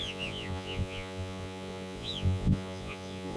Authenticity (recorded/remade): remade